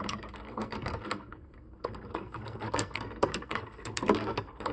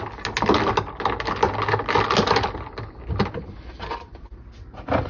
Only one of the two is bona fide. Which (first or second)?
second